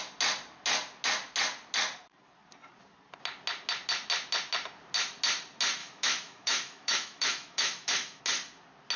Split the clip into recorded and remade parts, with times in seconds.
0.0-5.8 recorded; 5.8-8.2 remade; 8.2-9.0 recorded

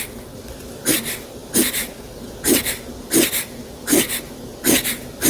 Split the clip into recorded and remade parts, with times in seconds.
0.0-5.3 recorded

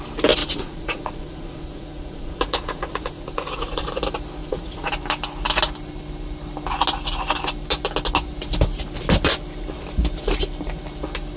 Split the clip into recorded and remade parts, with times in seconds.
0.0-0.4 recorded; 0.4-3.8 remade; 3.8-4.4 recorded; 4.4-4.9 remade; 4.9-11.4 recorded

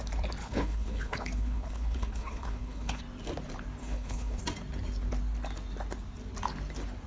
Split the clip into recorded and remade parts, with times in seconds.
0.0-0.4 recorded; 0.4-3.0 remade; 3.0-3.8 recorded; 3.8-4.4 remade; 4.4-7.1 recorded